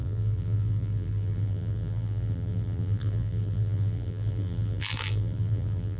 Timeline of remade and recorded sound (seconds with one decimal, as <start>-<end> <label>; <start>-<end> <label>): 0.0-6.0 remade